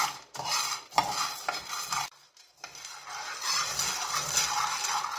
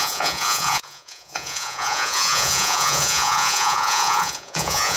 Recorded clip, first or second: first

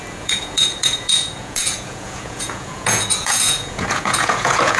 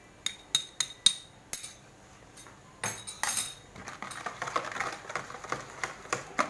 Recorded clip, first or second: second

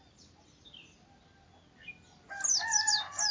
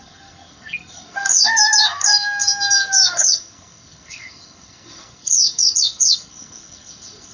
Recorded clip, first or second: first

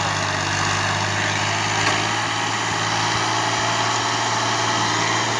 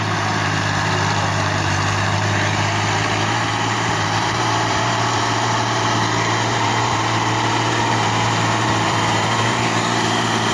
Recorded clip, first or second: first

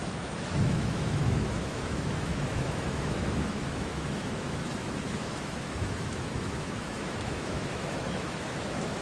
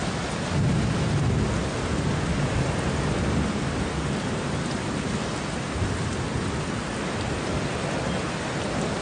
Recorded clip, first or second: second